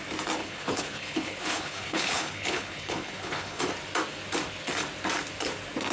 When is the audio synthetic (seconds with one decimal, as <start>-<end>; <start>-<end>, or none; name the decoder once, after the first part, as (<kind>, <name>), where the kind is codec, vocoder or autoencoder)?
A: 0.4-3.6 (codec, HILCodec)